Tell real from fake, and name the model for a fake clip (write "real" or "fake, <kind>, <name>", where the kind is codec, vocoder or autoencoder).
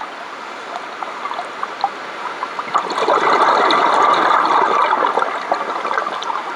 real